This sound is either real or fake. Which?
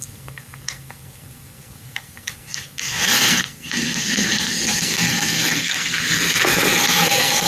fake